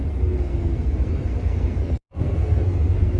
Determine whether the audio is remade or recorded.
remade